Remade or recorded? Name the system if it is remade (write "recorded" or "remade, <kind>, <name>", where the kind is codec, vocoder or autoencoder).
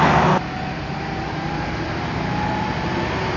recorded